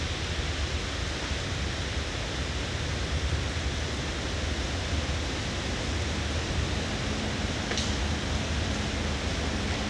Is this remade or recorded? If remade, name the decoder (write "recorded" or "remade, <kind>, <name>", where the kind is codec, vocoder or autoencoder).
recorded